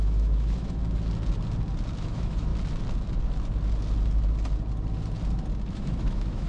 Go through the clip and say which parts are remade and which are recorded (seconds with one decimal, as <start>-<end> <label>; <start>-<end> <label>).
0.0-0.8 remade; 0.8-2.0 recorded; 2.0-2.5 remade; 2.5-5.7 recorded; 5.7-6.5 remade